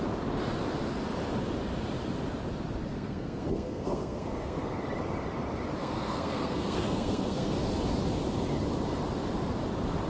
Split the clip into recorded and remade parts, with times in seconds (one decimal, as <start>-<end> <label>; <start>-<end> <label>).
0.0-2.9 recorded; 2.9-4.8 remade; 4.8-5.8 recorded; 5.8-7.5 remade; 7.5-10.1 recorded